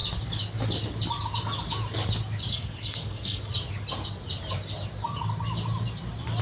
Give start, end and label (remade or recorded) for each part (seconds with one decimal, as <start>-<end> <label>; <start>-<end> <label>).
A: 0.0-2.5 recorded; 2.5-3.4 remade; 3.4-6.4 recorded